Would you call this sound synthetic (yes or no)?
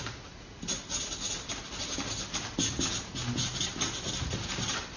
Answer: no